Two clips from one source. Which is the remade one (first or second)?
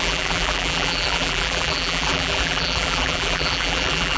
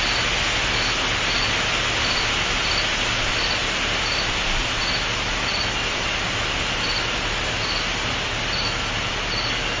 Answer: first